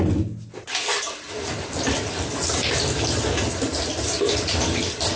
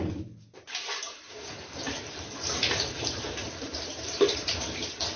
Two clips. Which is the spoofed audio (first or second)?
second